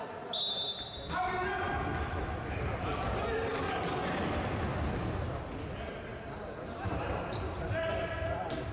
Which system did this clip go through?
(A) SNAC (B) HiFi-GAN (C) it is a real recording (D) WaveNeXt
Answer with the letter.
C